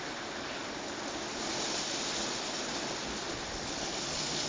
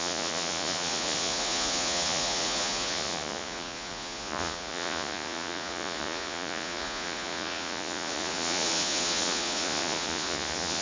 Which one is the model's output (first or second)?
second